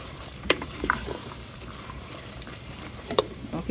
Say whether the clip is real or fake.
fake